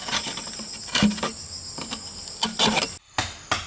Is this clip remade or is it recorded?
recorded